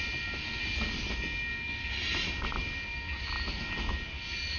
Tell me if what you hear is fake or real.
real